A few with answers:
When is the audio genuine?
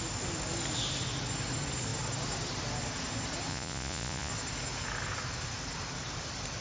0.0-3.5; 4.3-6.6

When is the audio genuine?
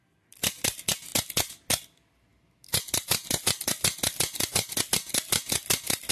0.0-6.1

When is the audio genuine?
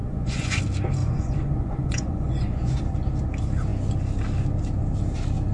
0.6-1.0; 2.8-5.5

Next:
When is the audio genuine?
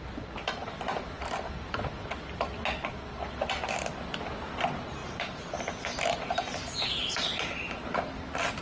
0.0-8.6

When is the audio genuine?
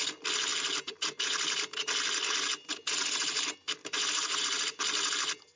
0.0-3.8; 4.4-5.6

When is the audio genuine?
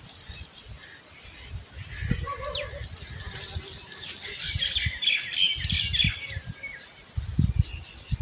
0.0-8.2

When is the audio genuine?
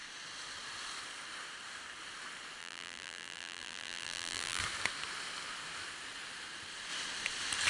0.0-2.6; 4.6-7.7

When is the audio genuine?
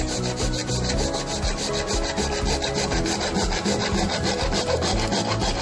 0.0-5.6